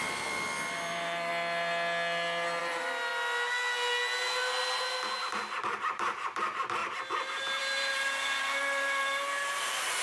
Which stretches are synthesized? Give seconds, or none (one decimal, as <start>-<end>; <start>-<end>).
0.0-1.3; 2.6-3.1; 5.2-6.8; 7.6-10.0

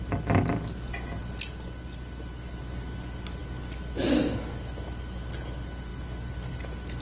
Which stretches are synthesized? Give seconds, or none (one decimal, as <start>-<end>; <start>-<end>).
none

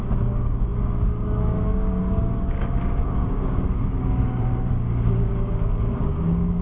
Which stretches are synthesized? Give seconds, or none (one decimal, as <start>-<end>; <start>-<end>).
0.0-6.6